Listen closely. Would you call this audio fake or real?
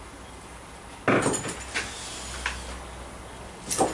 real